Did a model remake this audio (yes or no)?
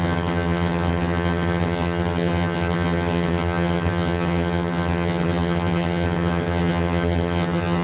yes